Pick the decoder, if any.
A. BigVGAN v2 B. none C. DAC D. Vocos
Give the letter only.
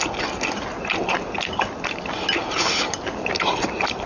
B